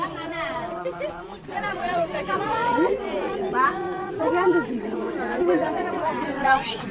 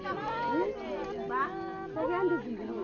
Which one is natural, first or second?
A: second